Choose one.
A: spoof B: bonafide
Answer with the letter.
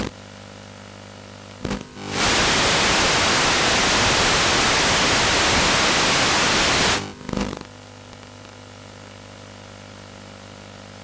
B